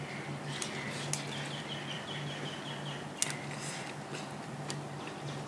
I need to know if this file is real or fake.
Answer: real